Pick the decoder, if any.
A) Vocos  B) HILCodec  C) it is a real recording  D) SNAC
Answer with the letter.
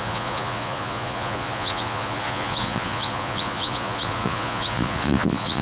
A